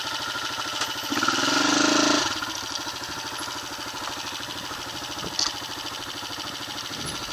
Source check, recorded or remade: recorded